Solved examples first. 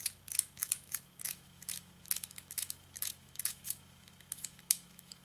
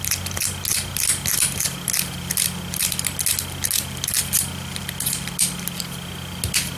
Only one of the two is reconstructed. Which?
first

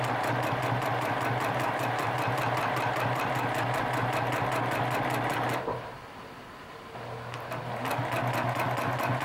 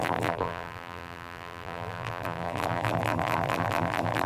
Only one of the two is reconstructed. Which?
second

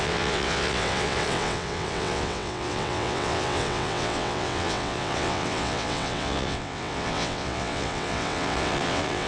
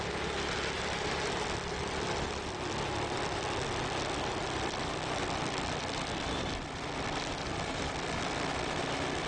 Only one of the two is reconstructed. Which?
first